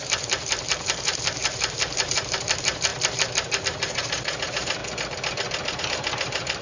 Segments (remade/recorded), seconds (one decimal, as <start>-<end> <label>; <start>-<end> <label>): 0.0-4.8 remade; 4.8-5.8 recorded; 5.8-6.6 remade